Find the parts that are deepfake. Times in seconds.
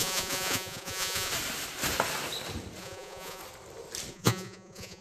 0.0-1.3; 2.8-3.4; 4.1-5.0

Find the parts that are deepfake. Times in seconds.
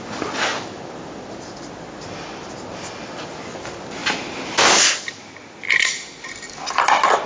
none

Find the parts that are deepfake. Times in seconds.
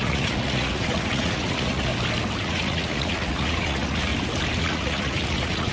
0.0-1.9; 2.4-4.1; 4.6-5.7